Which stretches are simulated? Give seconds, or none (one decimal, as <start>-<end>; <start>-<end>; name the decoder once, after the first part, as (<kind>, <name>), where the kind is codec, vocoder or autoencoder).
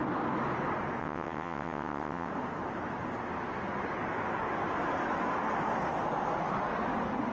1.0-2.3 (vocoder, WaveNeXt)